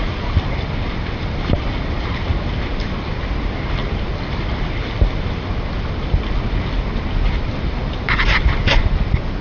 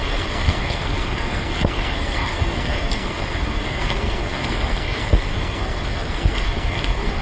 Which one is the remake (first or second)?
second